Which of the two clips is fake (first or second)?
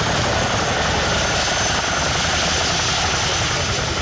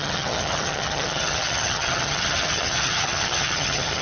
second